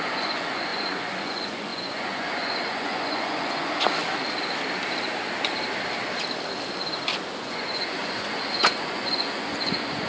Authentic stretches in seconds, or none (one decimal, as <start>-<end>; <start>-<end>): 4.0-7.4